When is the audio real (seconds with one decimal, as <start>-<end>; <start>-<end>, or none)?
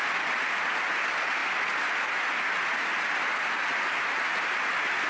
0.0-5.1